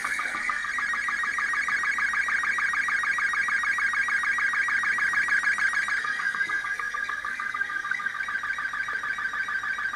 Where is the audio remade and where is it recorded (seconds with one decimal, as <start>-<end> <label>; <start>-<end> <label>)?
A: 0.0-0.7 remade; 0.7-6.0 recorded; 6.0-8.2 remade; 8.2-10.0 recorded